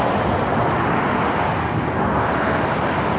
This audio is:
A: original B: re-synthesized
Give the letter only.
A